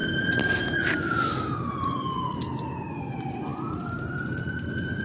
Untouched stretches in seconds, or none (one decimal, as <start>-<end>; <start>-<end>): 0.0-5.0